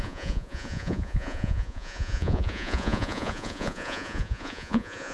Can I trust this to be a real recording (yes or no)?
no